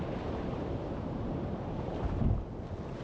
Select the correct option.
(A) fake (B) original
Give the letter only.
B